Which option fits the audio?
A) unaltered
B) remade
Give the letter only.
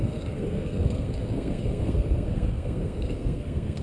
B